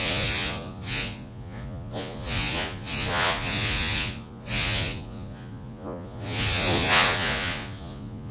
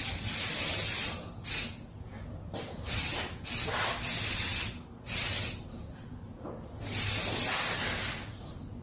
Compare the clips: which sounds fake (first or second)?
first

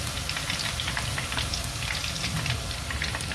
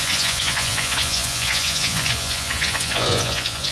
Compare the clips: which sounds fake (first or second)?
second